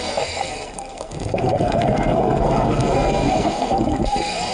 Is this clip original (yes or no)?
no